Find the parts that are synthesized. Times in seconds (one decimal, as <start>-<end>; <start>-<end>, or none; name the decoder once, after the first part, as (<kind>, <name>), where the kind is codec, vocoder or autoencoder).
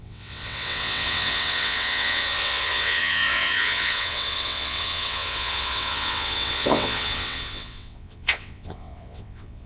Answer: 0.0-9.7 (vocoder, WaveNeXt)